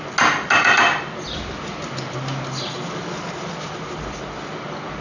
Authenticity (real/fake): real